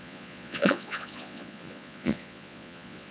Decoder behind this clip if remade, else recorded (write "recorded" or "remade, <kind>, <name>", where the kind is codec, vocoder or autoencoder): remade, vocoder, Vocos